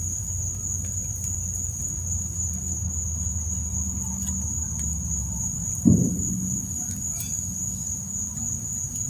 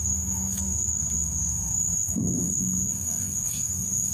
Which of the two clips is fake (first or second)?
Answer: second